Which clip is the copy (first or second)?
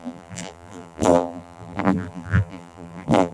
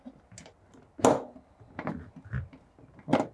first